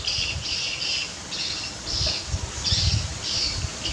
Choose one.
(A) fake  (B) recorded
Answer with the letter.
B